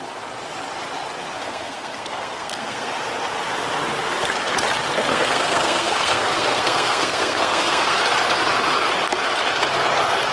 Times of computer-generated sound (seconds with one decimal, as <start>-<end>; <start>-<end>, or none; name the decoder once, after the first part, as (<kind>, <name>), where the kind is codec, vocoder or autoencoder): 1.4-2.9 (codec, SNAC); 5.1-8.0